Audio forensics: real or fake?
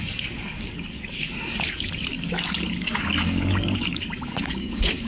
fake